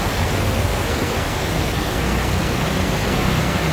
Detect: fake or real fake